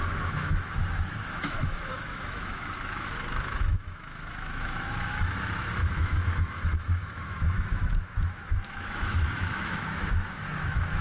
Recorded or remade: remade